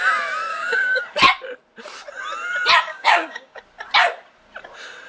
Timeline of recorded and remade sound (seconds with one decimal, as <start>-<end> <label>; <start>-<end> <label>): 0.0-0.5 recorded; 0.5-1.0 remade; 1.0-2.9 recorded; 2.9-3.6 remade; 3.6-5.1 recorded